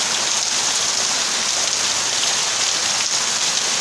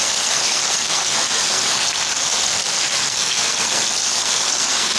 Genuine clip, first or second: first